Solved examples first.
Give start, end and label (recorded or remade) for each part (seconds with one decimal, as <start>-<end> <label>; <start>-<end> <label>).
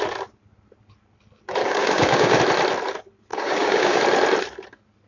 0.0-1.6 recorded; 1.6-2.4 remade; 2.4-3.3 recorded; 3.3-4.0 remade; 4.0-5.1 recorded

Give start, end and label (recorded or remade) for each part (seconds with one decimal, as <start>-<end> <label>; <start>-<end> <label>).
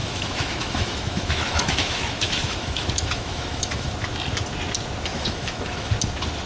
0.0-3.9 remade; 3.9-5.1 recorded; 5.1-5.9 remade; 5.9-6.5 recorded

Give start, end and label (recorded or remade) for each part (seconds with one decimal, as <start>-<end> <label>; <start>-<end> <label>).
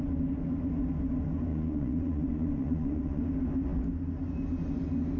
0.0-1.5 recorded; 1.5-3.2 remade; 3.2-5.2 recorded